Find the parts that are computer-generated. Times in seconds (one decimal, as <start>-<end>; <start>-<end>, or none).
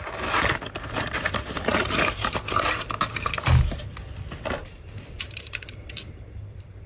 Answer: 4.6-6.9